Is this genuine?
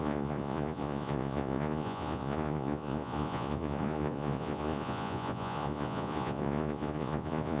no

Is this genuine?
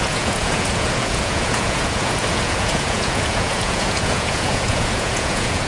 no